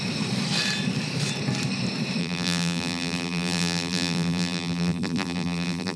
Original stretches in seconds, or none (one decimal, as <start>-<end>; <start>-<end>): 0.0-2.2

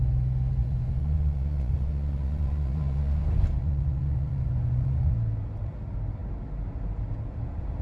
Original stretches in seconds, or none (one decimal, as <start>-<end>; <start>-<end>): 0.0-0.6; 3.2-3.6; 5.1-7.8